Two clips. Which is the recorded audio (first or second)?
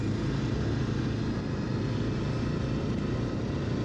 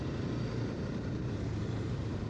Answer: first